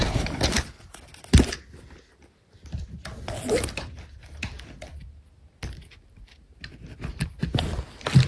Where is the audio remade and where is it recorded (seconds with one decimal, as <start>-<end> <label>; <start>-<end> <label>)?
0.0-8.3 recorded